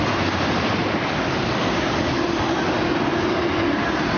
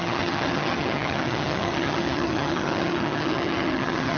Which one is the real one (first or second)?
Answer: first